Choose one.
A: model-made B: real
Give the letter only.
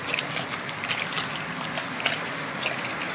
B